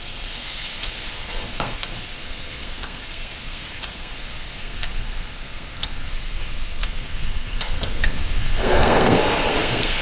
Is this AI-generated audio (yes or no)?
yes